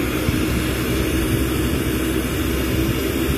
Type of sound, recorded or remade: recorded